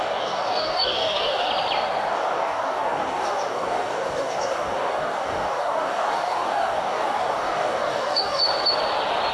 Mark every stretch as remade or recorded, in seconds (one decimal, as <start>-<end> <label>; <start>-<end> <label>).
0.0-1.5 remade; 1.5-2.1 recorded; 2.1-8.4 remade; 8.4-9.3 recorded